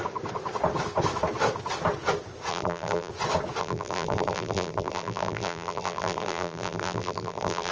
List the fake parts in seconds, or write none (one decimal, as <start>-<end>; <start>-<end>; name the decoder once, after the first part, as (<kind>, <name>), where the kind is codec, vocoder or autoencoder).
2.5-3.1 (vocoder, BigVGAN v2); 3.6-7.7